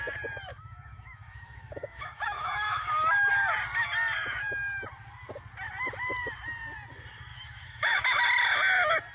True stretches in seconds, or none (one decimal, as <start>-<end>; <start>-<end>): 0.0-0.5; 3.3-7.3; 8.2-9.1